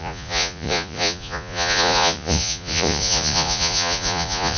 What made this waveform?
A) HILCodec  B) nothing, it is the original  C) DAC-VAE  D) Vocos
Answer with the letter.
D